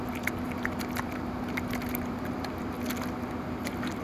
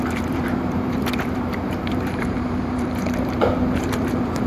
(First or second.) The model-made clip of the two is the second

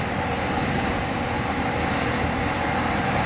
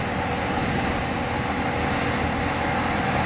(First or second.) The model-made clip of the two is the first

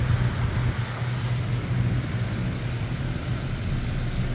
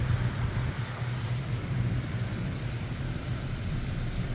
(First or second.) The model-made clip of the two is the second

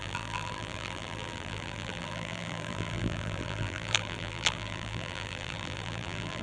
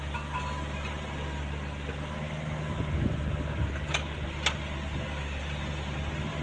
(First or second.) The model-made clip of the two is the first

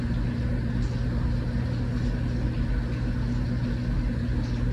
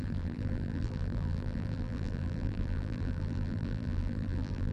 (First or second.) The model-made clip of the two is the second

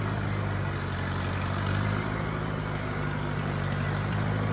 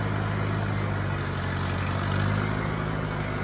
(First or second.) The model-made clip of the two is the first